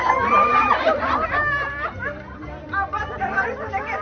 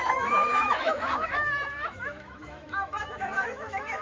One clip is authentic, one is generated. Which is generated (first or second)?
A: second